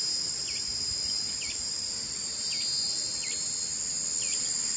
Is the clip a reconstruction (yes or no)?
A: no